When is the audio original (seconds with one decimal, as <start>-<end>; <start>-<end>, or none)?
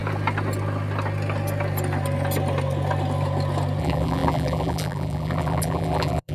0.0-3.8